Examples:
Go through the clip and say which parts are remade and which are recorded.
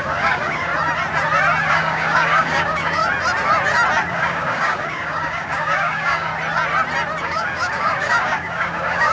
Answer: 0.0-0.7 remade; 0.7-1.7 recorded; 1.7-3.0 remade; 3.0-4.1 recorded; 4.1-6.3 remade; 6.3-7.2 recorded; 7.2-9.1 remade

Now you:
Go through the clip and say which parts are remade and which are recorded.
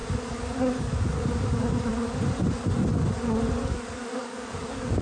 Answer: 0.0-1.9 remade; 1.9-3.7 recorded; 3.7-5.0 remade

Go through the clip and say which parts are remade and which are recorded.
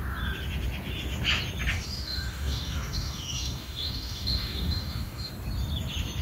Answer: 0.0-1.7 recorded; 1.7-5.3 remade; 5.3-6.2 recorded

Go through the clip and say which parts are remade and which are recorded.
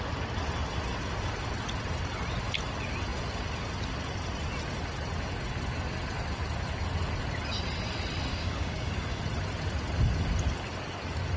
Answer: 0.0-8.3 recorded; 8.3-9.2 remade; 9.2-11.4 recorded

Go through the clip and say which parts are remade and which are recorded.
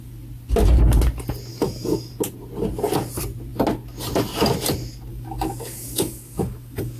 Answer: 0.0-1.5 recorded; 1.5-2.1 remade; 2.1-5.1 recorded; 5.1-7.0 remade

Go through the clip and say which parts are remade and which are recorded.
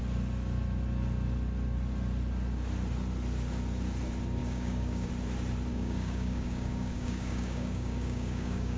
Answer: 0.0-4.4 recorded; 4.4-5.1 remade; 5.1-5.7 recorded; 5.7-8.8 remade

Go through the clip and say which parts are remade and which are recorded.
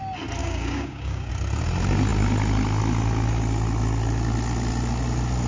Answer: 0.0-0.4 recorded; 0.4-1.3 remade; 1.3-5.5 recorded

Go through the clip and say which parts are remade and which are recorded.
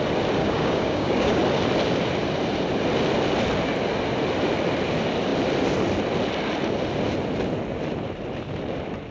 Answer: 0.0-0.4 recorded; 0.4-1.4 remade; 1.4-9.1 recorded